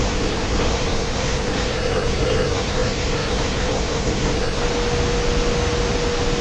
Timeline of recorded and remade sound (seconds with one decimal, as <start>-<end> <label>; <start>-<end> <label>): 0.0-4.6 remade; 4.6-6.4 recorded